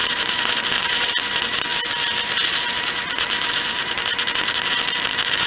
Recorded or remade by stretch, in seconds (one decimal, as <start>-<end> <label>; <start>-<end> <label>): 0.0-1.1 remade; 1.1-5.5 recorded